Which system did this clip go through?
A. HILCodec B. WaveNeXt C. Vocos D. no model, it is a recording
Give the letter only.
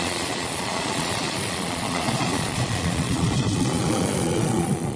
C